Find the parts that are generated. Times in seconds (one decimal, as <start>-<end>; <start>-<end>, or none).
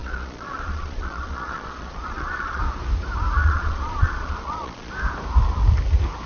0.0-2.6; 3.4-4.9